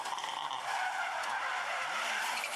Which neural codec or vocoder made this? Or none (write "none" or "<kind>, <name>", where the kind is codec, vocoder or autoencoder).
none